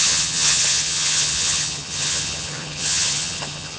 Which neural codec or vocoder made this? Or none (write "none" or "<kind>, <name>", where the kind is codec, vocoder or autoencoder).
vocoder, HiFi-GAN